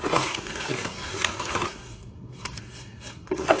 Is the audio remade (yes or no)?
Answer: yes